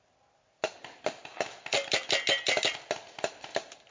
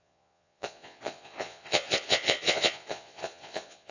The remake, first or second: second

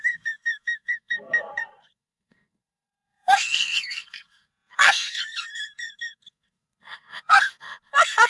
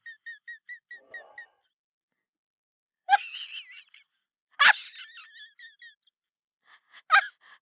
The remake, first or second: first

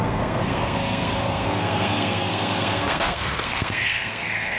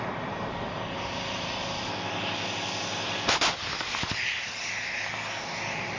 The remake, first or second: first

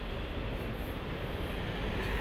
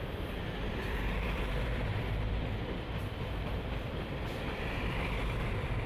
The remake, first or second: second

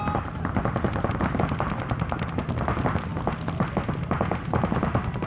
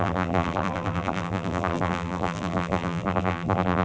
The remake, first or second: second